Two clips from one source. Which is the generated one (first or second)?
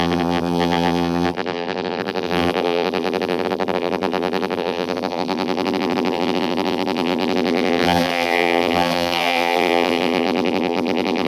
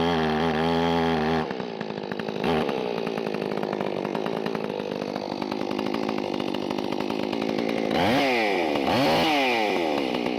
first